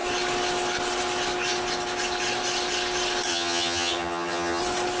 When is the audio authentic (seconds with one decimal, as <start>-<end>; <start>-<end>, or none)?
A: 0.0-3.3; 4.6-5.0